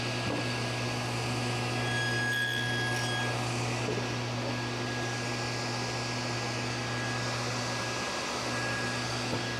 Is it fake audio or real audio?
real